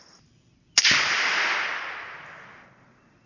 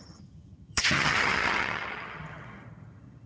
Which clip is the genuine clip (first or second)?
first